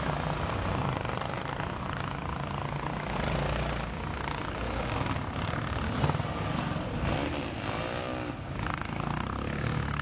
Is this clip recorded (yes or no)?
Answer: yes